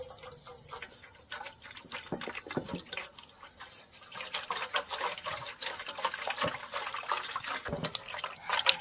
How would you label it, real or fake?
real